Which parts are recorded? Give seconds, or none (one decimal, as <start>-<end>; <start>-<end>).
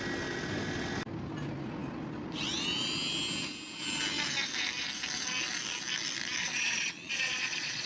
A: 0.0-6.4